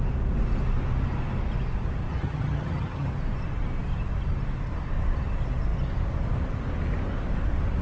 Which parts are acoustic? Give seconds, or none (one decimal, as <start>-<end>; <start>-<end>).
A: 0.0-2.1; 3.1-7.8